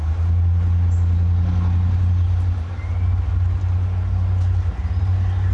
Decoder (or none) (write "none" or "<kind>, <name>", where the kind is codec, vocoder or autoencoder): none